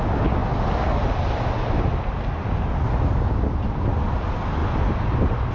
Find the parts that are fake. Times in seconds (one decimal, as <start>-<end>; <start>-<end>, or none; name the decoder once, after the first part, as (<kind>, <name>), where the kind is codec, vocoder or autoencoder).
none